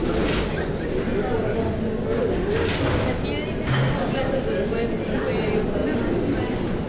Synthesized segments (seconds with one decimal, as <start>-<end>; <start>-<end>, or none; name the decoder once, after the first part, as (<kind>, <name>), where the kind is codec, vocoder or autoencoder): none